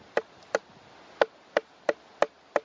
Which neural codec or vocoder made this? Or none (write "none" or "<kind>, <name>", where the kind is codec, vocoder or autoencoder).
none